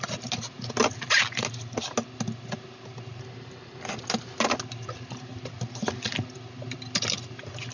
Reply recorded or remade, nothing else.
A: recorded